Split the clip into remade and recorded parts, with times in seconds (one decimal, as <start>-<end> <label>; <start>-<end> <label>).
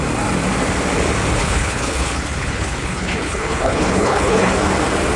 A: 0.0-1.4 recorded; 1.4-4.5 remade; 4.5-5.2 recorded